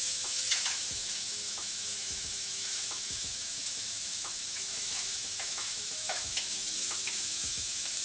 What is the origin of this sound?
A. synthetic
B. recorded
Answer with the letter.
A